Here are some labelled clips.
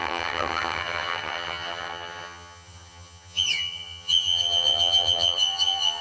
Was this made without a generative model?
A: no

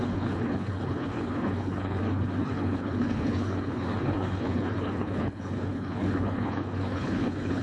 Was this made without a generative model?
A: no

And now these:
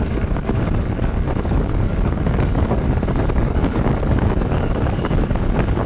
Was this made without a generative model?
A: no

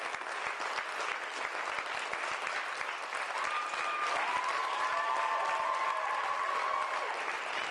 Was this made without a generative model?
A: yes